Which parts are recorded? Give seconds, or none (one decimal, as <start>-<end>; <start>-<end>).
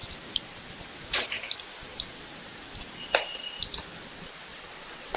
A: 0.0-4.5